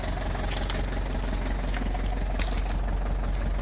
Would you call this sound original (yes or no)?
yes